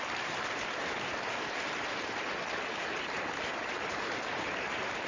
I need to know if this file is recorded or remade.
remade